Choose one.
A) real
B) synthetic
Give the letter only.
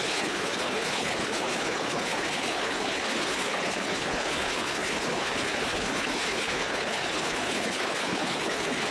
B